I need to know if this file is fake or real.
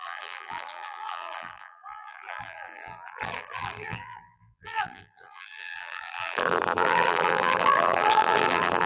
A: fake